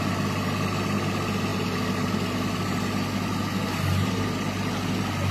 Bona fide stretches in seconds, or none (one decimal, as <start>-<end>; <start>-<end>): 0.0-5.3